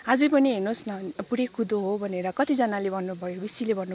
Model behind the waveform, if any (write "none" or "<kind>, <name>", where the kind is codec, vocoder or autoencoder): none